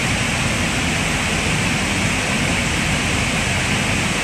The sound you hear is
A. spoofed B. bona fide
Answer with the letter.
B